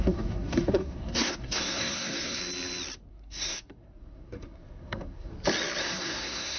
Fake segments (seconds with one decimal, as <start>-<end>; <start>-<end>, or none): 0.0-2.4; 3.1-5.3; 5.8-6.6